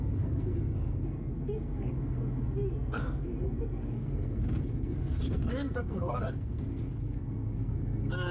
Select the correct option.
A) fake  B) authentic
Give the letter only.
A